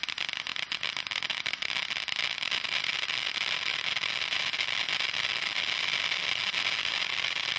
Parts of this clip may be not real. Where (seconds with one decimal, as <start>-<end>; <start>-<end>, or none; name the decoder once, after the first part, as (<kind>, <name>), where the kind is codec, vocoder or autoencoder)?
none

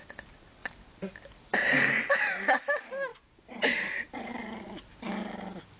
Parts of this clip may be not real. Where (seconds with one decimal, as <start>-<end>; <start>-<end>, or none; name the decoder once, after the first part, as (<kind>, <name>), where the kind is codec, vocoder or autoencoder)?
3.1-4.3 (vocoder, BigVGAN v2)

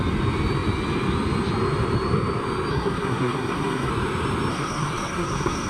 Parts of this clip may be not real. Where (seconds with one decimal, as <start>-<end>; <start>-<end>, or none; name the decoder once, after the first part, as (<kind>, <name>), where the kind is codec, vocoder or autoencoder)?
2.7-3.9 (codec, SNAC); 4.5-5.7

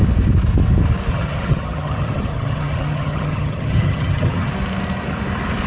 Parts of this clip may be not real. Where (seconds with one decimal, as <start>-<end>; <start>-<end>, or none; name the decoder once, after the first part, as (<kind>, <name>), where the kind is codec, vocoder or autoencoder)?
1.1-4.5 (vocoder, HiFi-GAN)

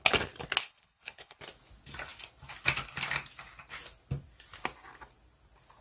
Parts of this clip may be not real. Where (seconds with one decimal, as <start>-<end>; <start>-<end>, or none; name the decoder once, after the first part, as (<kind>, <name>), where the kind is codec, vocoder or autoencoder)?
0.6-1.4 (codec, HILCodec)